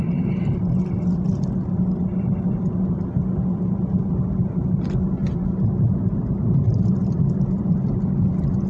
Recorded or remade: recorded